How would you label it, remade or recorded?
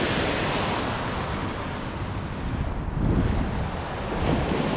recorded